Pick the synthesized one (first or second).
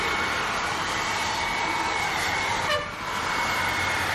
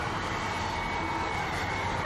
first